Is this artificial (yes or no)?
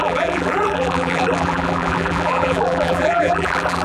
yes